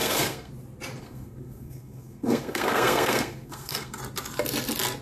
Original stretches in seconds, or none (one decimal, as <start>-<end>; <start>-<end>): 0.5-1.0; 4.0-5.0